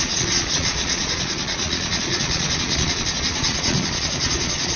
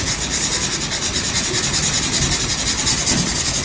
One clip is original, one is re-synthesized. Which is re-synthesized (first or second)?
first